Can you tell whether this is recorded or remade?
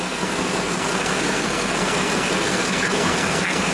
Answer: remade